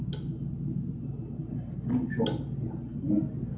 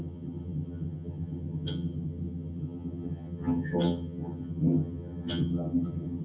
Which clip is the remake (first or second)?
second